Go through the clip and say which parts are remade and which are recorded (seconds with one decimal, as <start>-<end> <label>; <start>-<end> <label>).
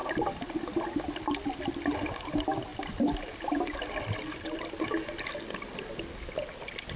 0.0-7.0 recorded